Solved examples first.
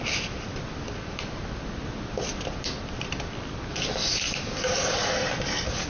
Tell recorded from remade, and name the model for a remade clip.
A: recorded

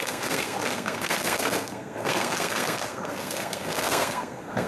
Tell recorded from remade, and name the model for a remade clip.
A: remade, codec, SNAC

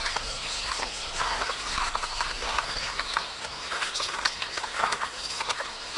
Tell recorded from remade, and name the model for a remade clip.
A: remade, codec, SNAC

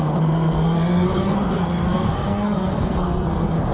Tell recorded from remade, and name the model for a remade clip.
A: remade, codec, SNAC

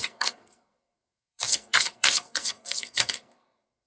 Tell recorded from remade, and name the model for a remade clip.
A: remade, codec, SNAC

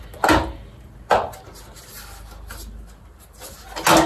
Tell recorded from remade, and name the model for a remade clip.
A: recorded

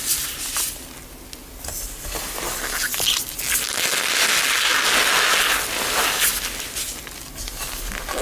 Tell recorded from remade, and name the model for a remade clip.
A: recorded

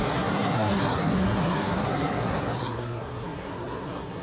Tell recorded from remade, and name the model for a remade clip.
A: remade, codec, SNAC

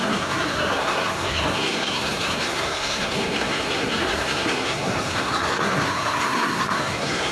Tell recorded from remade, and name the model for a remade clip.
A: remade, codec, SNAC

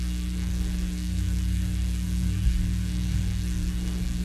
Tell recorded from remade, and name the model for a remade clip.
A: remade, codec, SNAC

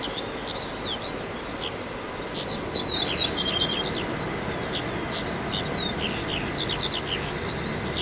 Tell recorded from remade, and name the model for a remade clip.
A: recorded